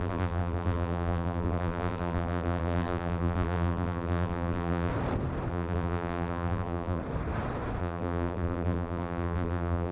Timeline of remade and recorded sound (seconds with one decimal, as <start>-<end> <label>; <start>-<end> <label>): 0.0-4.9 remade; 4.9-5.5 recorded; 5.5-7.0 remade; 7.0-7.8 recorded; 7.8-9.9 remade